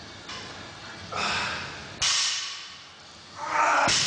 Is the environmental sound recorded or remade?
recorded